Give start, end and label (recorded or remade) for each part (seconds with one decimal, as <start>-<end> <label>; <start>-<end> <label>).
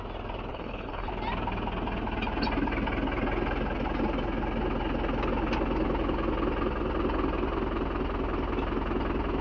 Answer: 0.0-0.5 recorded; 0.5-1.1 remade; 1.1-9.4 recorded